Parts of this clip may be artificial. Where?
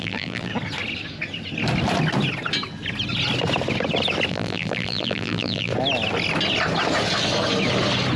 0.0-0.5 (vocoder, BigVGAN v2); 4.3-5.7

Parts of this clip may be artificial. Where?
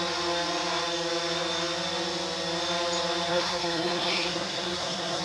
3.3-5.2 (codec, SNAC)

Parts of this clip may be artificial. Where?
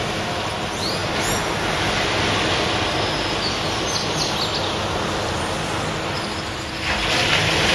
none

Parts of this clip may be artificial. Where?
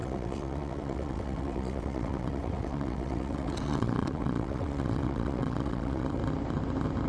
0.0-6.2 (vocoder, WaveNeXt)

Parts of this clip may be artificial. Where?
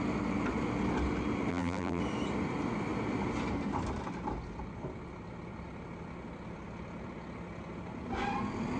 1.5-2.0 (vocoder, BigVGAN v2)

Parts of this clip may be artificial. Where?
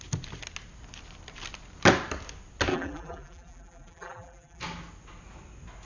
2.7-4.6 (vocoder, BigVGAN v2)